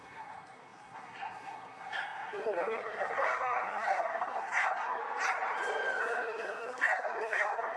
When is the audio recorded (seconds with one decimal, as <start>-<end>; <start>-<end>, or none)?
5.0-6.0